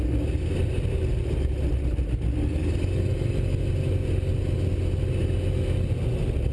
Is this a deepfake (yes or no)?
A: no